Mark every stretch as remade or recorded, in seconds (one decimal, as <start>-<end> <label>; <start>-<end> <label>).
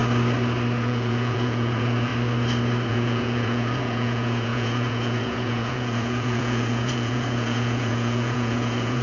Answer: 0.0-0.8 recorded; 0.8-2.1 remade; 2.1-2.9 recorded; 2.9-9.0 remade